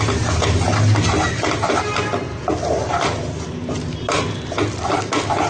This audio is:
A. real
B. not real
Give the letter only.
A